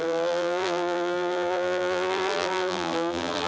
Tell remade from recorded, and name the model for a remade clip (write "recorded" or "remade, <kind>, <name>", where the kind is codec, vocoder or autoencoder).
remade, vocoder, BigVGAN v2